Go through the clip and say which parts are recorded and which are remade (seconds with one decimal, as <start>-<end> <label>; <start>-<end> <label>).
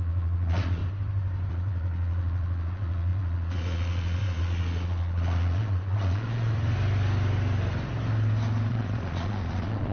0.0-0.8 remade; 0.8-1.5 recorded; 1.5-6.5 remade; 6.5-8.7 recorded; 8.7-9.9 remade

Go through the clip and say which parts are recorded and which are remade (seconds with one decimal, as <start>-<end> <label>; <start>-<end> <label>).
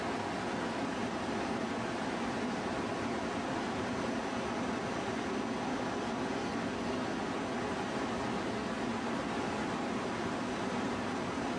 0.0-11.6 recorded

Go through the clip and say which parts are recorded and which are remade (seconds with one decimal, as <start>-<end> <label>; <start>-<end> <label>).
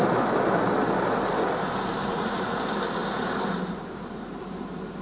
0.0-2.0 recorded; 2.0-2.6 remade; 2.6-5.0 recorded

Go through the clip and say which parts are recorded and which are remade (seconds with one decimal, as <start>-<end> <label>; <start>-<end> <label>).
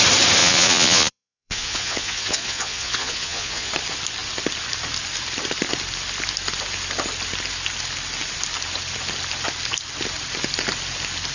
0.0-0.4 recorded; 0.4-3.7 remade; 3.7-11.3 recorded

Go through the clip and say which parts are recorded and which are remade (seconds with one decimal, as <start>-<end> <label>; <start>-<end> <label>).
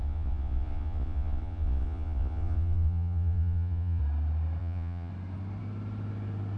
0.0-4.0 remade; 4.0-4.6 recorded; 4.6-5.1 remade; 5.1-6.6 recorded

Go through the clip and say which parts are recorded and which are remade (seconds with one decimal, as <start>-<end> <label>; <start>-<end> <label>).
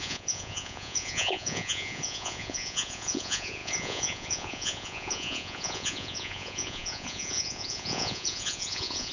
0.0-9.1 remade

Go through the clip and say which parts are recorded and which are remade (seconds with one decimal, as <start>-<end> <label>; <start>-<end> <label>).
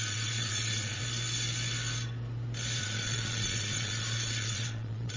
0.0-1.0 remade; 1.0-2.8 recorded; 2.8-5.2 remade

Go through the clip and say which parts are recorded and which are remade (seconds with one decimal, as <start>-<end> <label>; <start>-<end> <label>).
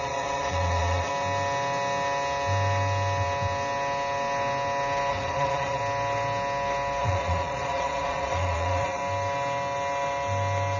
0.0-1.1 remade; 1.1-5.1 recorded; 5.1-5.8 remade; 5.8-7.0 recorded; 7.0-9.0 remade; 9.0-10.8 recorded